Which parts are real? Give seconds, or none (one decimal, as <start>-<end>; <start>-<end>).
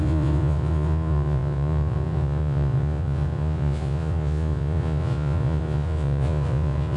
none